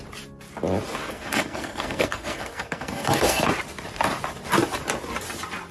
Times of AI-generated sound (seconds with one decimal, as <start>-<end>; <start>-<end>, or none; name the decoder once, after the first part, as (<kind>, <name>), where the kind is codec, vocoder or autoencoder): 1.1-3.5 (codec, SNAC)